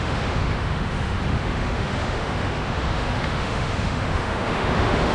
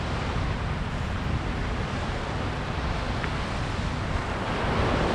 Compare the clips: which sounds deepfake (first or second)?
first